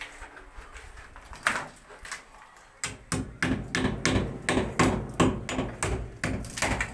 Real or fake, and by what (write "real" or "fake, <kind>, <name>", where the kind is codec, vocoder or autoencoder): real